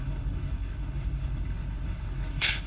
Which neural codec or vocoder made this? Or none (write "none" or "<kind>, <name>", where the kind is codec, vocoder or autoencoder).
codec, HILCodec